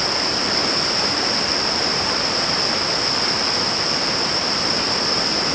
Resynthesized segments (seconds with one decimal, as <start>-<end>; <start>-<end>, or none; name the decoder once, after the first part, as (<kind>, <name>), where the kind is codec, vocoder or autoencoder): 0.0-5.5 (vocoder, BigVGAN v2)